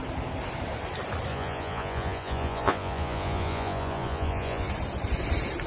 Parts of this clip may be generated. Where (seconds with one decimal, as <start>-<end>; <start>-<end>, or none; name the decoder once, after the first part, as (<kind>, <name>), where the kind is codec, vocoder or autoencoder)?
1.3-4.7 (vocoder, Vocos)